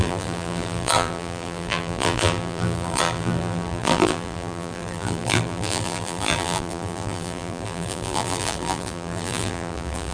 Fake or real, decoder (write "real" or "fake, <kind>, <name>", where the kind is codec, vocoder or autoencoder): fake, vocoder, BigVGAN v2